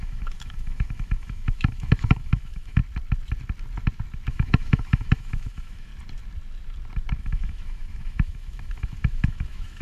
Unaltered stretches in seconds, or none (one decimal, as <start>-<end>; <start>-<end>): 2.8-4.3; 5.9-7.2

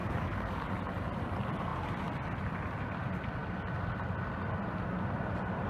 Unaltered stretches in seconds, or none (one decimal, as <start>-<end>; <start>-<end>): 0.8-5.7

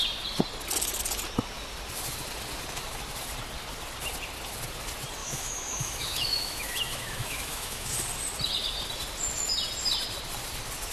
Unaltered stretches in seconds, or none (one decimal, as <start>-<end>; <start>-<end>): 0.0-5.2; 7.9-10.9

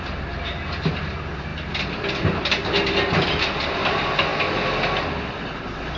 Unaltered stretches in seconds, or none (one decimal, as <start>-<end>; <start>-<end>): 0.0-6.0

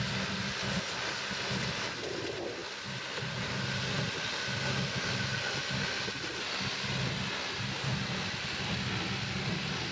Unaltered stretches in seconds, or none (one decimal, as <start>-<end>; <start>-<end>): 0.0-9.9

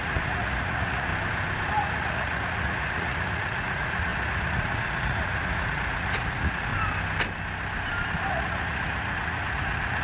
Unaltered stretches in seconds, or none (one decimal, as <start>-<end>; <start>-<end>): 1.1-1.7; 6.7-8.3